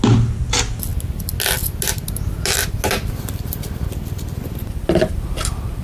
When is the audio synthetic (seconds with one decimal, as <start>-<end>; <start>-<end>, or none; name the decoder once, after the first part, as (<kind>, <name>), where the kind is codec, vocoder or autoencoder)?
none